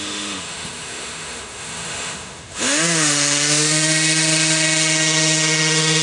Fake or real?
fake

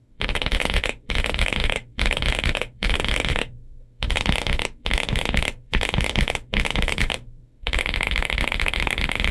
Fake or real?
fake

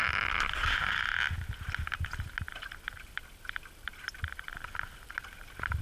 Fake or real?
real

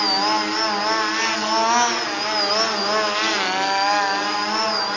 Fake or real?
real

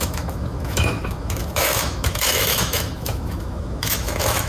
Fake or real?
fake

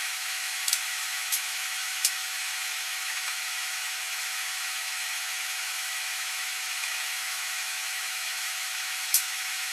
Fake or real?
fake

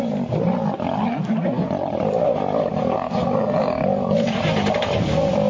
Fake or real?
real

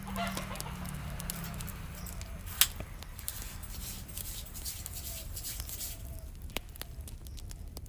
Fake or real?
real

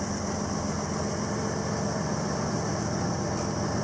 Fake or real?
real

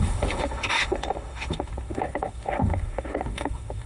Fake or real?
fake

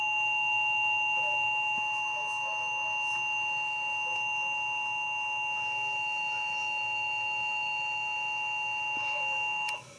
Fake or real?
fake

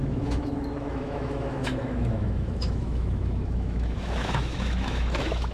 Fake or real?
fake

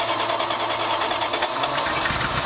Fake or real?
real